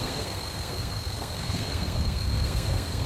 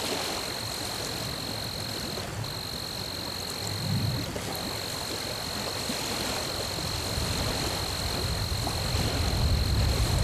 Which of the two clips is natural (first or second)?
second